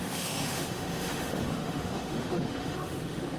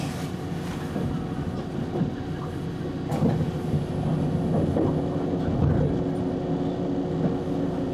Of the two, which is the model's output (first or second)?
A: first